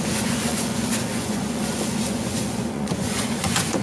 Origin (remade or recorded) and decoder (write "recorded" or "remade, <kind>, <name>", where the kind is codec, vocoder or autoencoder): remade, vocoder, Vocos